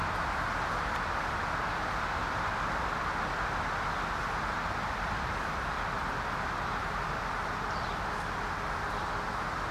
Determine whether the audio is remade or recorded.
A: recorded